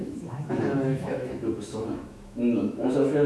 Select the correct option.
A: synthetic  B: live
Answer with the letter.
A